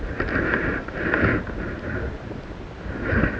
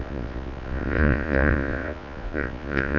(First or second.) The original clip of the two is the first